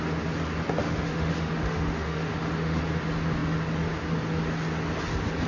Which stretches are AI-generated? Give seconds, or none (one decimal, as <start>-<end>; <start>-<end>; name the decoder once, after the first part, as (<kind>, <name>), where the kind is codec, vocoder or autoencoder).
0.8-2.8 (autoencoder, DAC-VAE)